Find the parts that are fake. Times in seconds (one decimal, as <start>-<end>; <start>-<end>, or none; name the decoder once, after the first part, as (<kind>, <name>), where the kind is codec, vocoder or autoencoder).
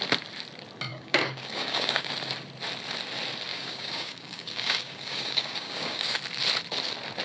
0.9-2.1 (codec, DAC); 3.5-6.2